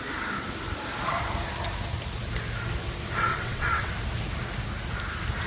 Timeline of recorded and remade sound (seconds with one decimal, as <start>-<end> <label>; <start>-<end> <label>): 0.0-3.3 recorded; 3.3-3.9 remade; 3.9-5.5 recorded